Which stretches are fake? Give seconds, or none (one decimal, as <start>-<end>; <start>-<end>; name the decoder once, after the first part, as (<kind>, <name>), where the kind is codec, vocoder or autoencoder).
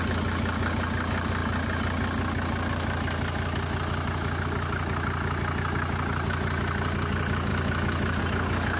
none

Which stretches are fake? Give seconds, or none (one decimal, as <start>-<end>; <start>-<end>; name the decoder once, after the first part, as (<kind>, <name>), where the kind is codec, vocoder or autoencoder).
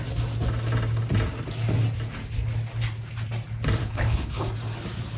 3.8-4.4 (codec, HILCodec)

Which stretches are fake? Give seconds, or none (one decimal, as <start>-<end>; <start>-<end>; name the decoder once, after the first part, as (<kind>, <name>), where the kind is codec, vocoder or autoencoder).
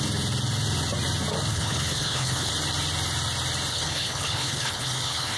1.5-2.5 (codec, HILCodec); 3.7-5.4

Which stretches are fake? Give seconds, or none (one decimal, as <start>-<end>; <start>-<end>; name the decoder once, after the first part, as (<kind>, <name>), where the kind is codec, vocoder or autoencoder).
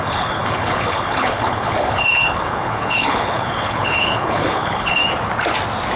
0.0-5.0 (codec, HILCodec)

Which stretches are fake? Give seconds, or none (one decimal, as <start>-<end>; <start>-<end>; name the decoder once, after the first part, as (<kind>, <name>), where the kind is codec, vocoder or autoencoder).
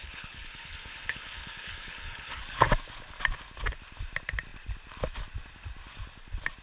0.0-2.4 (codec, HILCodec)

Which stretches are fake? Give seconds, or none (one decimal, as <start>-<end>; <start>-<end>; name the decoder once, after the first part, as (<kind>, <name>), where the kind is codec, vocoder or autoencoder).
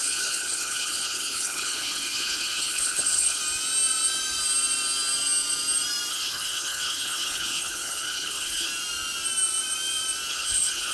0.0-3.4 (codec, HILCodec); 6.1-8.7; 10.3-10.9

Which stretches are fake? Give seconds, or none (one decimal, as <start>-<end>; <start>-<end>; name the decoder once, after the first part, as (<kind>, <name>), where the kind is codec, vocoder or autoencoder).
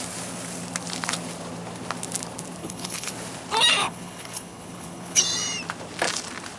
2.6-3.1 (codec, HILCodec); 3.8-5.2